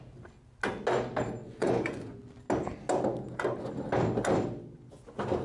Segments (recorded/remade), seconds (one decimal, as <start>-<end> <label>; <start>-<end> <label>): 0.0-1.4 recorded; 1.4-2.2 remade; 2.2-5.4 recorded